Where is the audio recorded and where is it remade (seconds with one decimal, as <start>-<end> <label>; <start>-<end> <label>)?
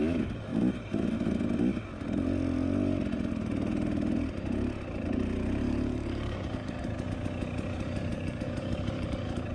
0.0-5.6 recorded; 5.6-6.8 remade; 6.8-8.1 recorded; 8.1-9.5 remade